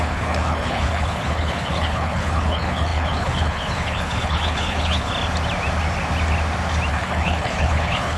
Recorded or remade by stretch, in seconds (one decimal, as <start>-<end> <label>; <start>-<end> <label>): 0.0-5.1 remade; 5.1-6.9 recorded; 6.9-8.2 remade

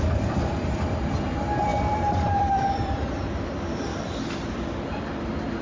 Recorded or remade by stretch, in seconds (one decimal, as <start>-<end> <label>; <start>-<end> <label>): 0.0-5.6 remade

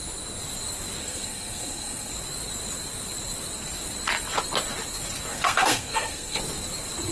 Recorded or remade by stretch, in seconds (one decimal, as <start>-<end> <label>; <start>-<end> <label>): 0.0-1.0 recorded; 1.0-2.1 remade; 2.1-5.3 recorded; 5.3-6.4 remade; 6.4-7.1 recorded

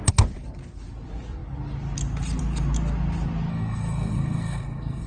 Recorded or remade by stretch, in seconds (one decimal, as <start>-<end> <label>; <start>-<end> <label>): 0.0-3.5 recorded; 3.5-5.1 remade

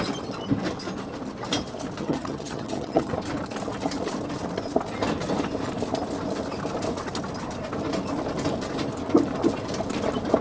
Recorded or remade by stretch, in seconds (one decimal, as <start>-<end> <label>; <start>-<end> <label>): 0.0-2.0 recorded; 2.0-3.1 remade; 3.1-10.4 recorded

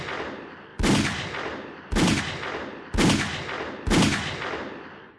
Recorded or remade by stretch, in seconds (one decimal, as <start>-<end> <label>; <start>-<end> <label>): 0.0-0.7 recorded; 0.7-2.2 remade; 2.2-5.2 recorded

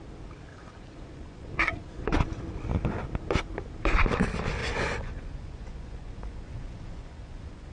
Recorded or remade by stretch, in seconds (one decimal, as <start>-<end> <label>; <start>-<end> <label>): 0.0-0.5 recorded; 0.5-2.4 remade; 2.4-4.6 recorded; 4.6-7.7 remade

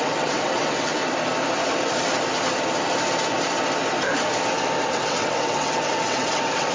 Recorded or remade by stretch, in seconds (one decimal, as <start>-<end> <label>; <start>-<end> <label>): 0.0-1.0 remade; 1.0-4.8 recorded; 4.8-6.7 remade